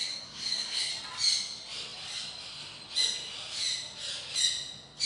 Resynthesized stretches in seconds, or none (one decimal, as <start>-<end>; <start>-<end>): 0.0-0.9